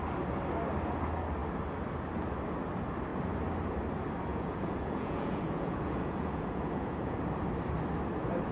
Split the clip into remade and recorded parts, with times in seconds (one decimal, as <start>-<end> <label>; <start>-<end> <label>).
0.0-4.3 recorded; 4.3-7.2 remade; 7.2-8.5 recorded